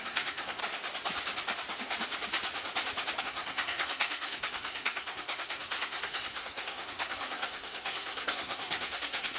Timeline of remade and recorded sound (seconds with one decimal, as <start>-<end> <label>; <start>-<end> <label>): 0.0-0.6 remade; 0.6-3.2 recorded; 3.2-9.4 remade